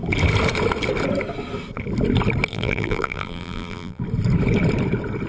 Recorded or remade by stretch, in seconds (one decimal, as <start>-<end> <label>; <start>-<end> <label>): 0.0-2.5 recorded; 2.5-4.0 remade; 4.0-5.3 recorded